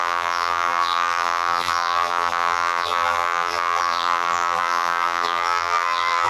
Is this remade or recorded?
remade